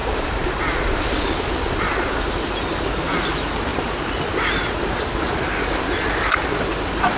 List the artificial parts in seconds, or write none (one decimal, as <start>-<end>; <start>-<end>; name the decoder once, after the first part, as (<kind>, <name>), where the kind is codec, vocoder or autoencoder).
0.0-3.3 (vocoder, BigVGAN v2); 3.7-4.3